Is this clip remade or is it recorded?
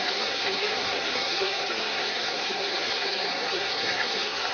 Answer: remade